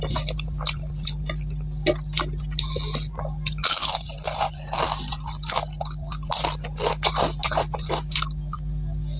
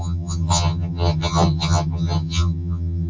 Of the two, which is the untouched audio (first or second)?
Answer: first